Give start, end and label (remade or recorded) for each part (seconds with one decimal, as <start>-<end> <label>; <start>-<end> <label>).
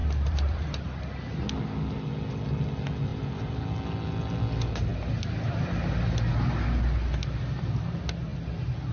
0.0-1.1 remade; 1.1-3.1 recorded; 3.1-3.6 remade; 3.6-8.9 recorded